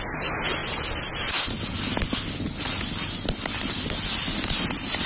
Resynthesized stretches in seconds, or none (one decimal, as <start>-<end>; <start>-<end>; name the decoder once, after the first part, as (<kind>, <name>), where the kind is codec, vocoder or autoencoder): none